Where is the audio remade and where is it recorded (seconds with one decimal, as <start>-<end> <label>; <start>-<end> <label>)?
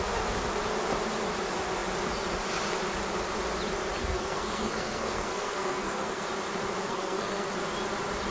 0.0-4.0 recorded; 4.0-6.3 remade; 6.3-6.8 recorded; 6.8-7.5 remade; 7.5-8.3 recorded